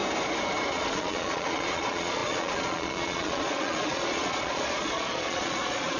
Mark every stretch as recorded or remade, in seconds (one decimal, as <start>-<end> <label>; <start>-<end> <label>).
0.0-0.7 recorded; 0.7-6.0 remade